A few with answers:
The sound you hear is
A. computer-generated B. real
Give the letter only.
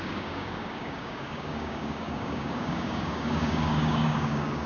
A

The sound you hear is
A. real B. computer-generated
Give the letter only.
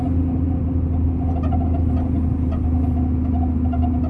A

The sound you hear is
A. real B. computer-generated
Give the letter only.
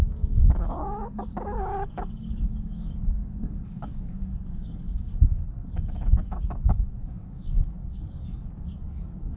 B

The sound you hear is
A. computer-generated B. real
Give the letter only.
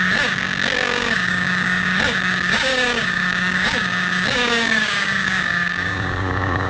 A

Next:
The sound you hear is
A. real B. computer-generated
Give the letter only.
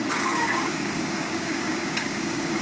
B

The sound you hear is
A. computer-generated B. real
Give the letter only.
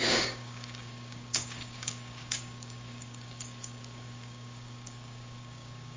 A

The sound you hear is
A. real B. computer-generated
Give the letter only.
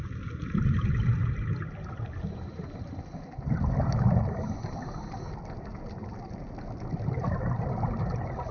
A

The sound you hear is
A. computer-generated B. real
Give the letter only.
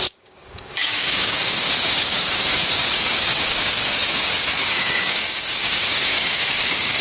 A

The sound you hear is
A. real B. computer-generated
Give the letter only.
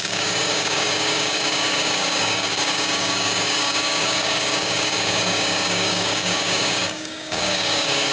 B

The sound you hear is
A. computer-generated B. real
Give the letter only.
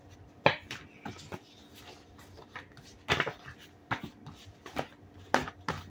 B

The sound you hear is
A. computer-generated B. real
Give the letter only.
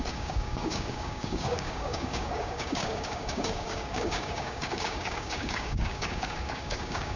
A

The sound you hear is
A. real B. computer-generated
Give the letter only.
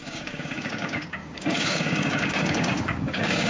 B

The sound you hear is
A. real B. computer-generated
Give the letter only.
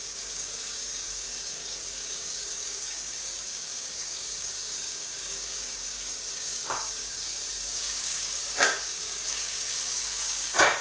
B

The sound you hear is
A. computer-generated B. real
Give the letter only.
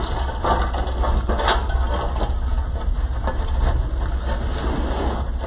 B